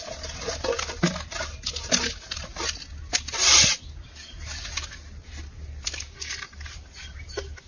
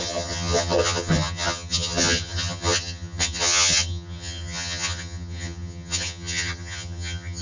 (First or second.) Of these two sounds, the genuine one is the first